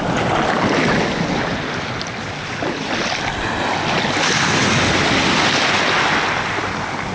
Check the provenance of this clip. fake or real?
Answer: real